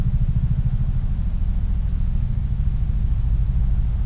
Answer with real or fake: real